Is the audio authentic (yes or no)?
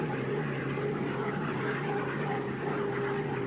yes